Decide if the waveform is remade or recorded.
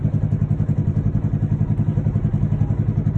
recorded